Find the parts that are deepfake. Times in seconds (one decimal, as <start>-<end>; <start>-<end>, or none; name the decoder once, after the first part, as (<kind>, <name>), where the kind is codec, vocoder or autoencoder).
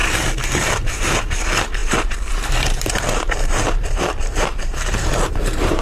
0.0-5.8 (vocoder, BigVGAN v2)